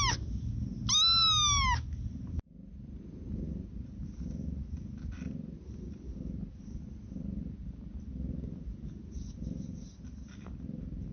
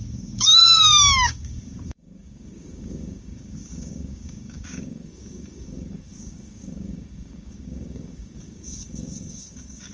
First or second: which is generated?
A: second